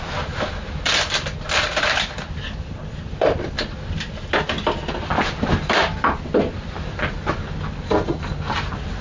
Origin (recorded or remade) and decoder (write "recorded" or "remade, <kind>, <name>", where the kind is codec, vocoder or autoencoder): remade, vocoder, BigVGAN v2